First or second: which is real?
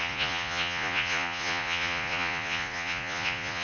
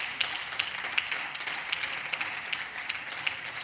second